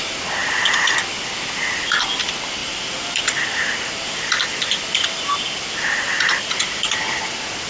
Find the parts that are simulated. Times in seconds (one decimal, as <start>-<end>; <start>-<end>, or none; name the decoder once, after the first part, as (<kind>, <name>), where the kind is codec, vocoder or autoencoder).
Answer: 0.4-1.5 (vocoder, BigVGAN v2); 2.6-7.2